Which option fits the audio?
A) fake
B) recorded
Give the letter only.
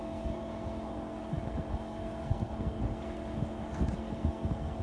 A